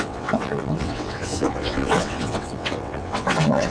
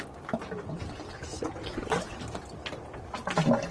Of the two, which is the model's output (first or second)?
first